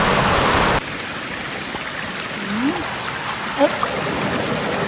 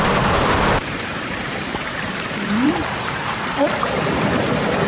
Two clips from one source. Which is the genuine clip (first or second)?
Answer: first